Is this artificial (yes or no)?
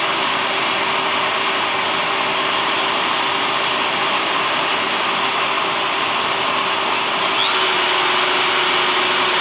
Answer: no